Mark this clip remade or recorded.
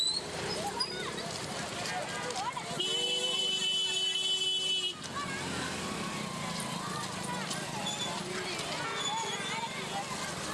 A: recorded